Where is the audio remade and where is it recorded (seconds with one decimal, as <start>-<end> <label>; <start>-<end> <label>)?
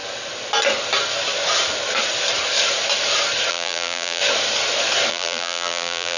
0.0-3.5 recorded; 3.5-4.2 remade; 4.2-5.1 recorded; 5.1-6.2 remade